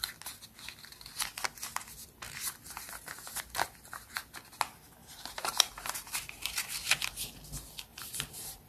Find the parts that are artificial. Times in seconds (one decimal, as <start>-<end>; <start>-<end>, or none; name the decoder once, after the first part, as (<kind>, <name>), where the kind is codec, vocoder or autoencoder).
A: 5.0-6.9 (vocoder, BigVGAN v2); 7.9-8.7